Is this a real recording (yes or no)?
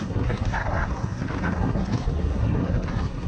no